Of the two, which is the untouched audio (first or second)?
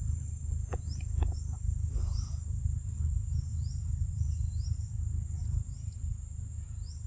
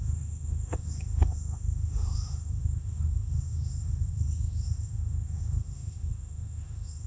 first